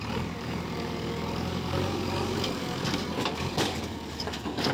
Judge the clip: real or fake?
fake